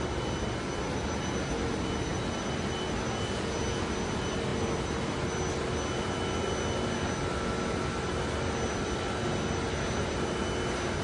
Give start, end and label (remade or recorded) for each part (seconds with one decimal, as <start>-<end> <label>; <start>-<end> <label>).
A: 0.0-11.0 recorded